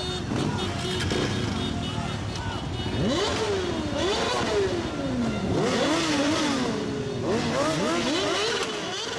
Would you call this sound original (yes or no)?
yes